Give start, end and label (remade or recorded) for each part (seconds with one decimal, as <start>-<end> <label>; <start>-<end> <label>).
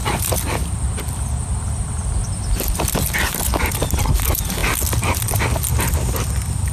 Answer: 0.0-6.7 recorded